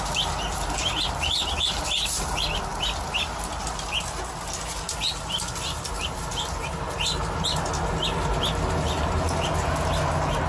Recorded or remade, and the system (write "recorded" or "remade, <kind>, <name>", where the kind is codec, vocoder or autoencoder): recorded